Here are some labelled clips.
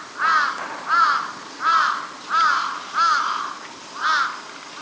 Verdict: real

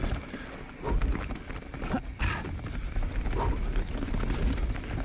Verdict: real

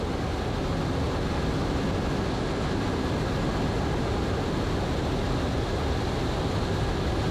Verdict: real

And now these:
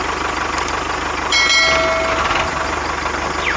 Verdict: real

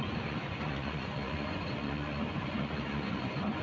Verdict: fake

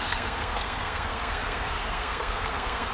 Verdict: fake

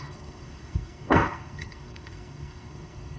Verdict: fake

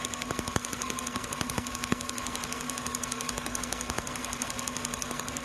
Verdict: fake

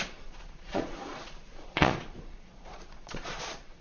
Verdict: fake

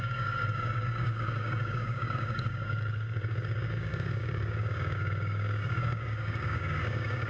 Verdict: fake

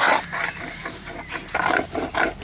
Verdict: real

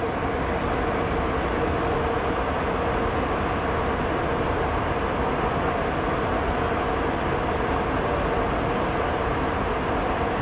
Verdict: real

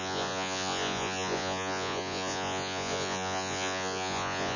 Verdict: fake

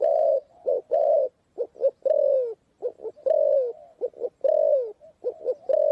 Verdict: real